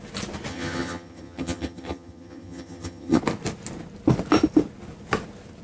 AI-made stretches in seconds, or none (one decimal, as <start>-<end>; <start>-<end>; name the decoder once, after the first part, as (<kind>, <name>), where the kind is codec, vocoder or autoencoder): 0.5-3.2 (vocoder, HiFi-GAN)

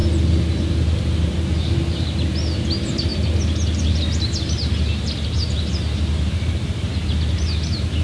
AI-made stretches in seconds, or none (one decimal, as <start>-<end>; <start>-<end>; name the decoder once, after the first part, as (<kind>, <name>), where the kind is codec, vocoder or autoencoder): none